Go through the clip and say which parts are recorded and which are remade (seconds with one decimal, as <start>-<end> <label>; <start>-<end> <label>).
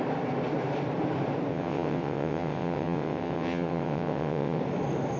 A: 0.0-1.5 recorded; 1.5-4.6 remade; 4.6-5.2 recorded